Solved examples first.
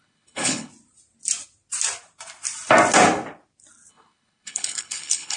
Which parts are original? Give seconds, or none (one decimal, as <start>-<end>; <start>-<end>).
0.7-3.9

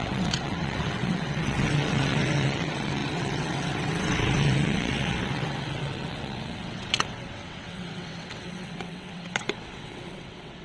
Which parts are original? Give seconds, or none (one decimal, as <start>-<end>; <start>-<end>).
none

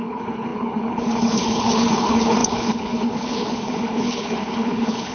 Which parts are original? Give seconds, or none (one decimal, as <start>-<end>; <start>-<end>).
none

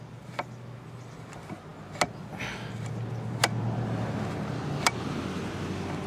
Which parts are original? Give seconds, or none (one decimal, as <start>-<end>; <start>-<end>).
0.0-6.1

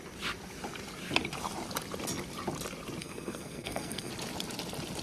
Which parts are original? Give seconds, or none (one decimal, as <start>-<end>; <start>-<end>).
0.0-3.0; 4.1-5.0